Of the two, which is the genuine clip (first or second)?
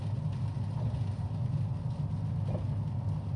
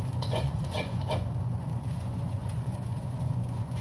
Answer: first